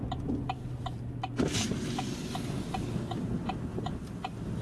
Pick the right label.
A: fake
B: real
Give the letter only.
B